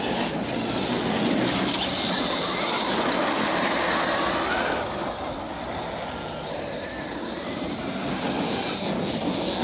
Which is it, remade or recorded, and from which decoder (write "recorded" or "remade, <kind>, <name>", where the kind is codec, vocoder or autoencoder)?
recorded